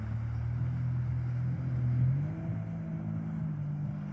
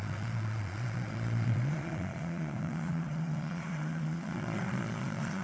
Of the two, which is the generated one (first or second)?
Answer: second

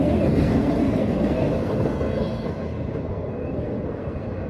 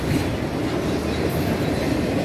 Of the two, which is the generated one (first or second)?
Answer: first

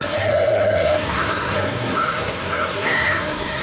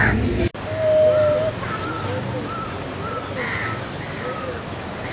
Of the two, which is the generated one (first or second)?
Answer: first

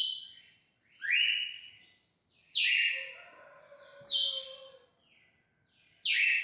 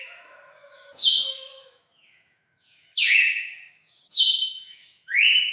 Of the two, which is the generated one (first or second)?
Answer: second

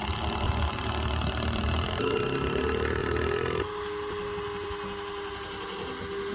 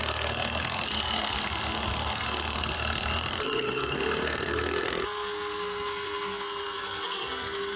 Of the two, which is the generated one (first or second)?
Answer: second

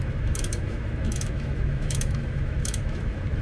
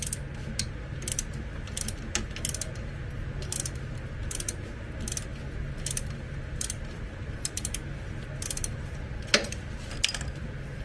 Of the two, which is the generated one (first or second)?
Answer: first